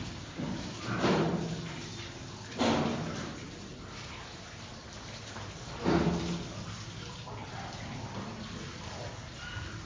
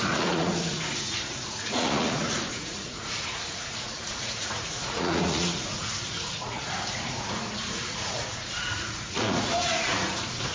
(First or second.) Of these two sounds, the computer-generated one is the second